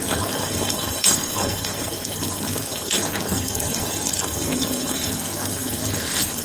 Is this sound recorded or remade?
remade